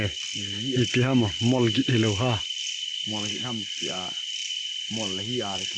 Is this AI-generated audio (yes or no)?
no